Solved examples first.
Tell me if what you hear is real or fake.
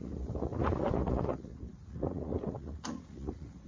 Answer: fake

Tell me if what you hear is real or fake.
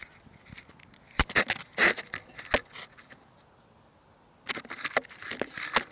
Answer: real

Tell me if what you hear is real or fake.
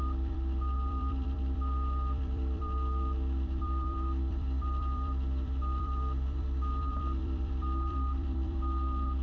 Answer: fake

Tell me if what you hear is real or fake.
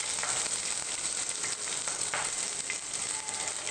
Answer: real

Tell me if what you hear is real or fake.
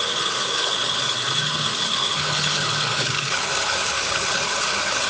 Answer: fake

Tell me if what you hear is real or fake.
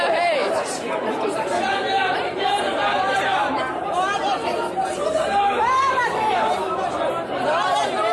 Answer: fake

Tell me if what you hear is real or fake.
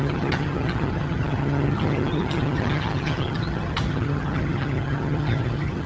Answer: fake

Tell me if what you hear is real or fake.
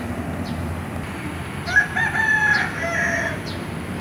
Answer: real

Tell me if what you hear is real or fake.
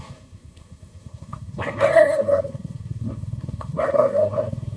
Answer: fake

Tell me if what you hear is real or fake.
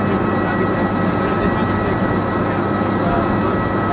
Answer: real